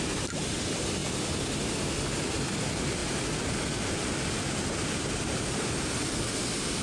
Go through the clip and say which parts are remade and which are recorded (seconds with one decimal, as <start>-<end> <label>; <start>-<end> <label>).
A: 0.0-6.8 recorded